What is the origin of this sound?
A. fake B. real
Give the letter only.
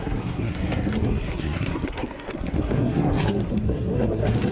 A